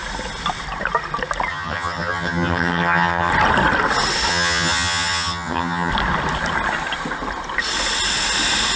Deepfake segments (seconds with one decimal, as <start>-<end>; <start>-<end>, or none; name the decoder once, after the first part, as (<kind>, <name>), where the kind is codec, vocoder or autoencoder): 1.5-3.3 (vocoder, HiFi-GAN); 4.3-5.9